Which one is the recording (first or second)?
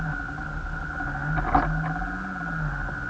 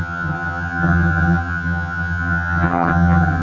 first